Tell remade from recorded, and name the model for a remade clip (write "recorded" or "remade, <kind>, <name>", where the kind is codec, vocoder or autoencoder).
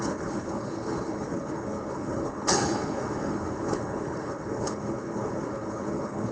remade, codec, HILCodec